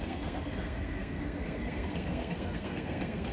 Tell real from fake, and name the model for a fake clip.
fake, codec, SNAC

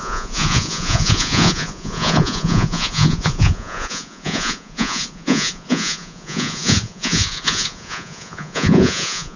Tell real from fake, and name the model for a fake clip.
fake, vocoder, Vocos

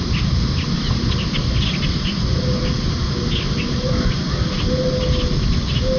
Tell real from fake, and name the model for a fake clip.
real